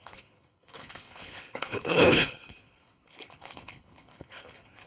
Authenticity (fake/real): fake